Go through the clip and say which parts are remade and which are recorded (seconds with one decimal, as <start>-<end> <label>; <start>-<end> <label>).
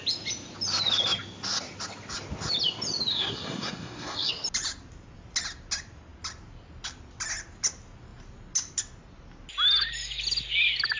0.0-3.1 recorded; 3.1-4.3 remade; 4.3-11.0 recorded